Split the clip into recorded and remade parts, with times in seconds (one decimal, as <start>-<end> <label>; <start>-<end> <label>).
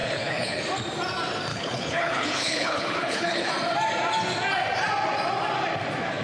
0.0-0.6 remade; 0.6-1.5 recorded; 1.5-3.5 remade; 3.5-6.2 recorded